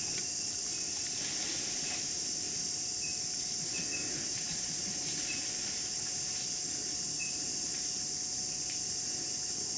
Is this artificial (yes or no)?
no